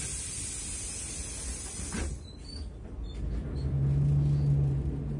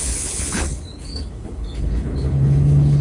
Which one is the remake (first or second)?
second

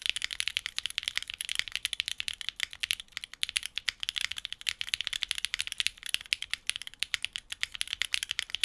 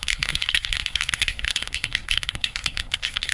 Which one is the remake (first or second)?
second